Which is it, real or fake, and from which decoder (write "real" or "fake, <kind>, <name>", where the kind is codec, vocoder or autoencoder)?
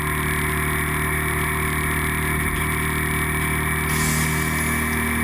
real